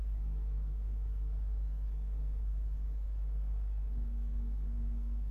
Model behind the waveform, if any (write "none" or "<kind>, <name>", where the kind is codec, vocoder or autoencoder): codec, SNAC